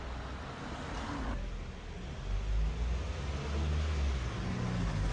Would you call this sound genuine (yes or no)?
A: yes